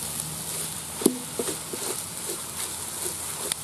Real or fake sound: real